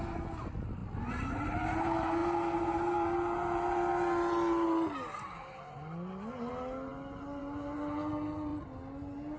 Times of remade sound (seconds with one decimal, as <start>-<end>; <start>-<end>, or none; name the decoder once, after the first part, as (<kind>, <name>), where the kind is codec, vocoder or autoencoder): none